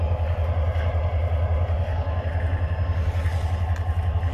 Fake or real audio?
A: real